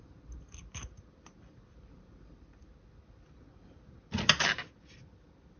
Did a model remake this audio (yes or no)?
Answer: no